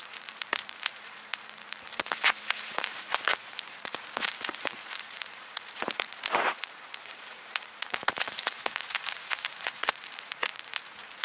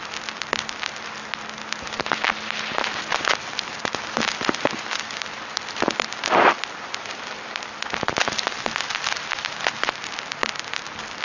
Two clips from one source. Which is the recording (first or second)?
second